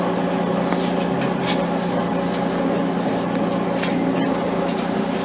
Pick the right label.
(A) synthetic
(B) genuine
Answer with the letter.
B